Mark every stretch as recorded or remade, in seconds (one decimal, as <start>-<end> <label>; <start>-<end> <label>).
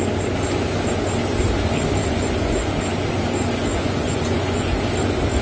0.0-2.0 recorded; 2.0-2.7 remade; 2.7-3.7 recorded; 3.7-4.8 remade; 4.8-5.4 recorded